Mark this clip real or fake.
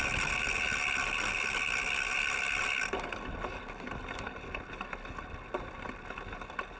real